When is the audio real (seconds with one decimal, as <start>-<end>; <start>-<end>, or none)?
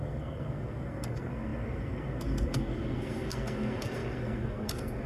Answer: none